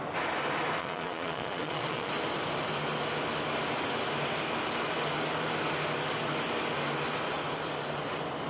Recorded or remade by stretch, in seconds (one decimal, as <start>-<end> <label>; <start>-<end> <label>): 0.0-0.8 recorded; 0.8-2.1 remade; 2.1-8.5 recorded